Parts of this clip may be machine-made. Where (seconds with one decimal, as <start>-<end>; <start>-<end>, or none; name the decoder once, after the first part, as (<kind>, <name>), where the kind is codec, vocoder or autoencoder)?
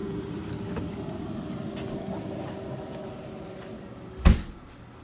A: 0.0-0.5 (vocoder, BigVGAN v2)